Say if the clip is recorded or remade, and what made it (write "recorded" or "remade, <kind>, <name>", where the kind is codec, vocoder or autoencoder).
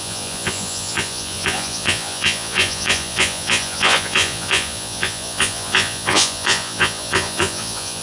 remade, vocoder, Vocos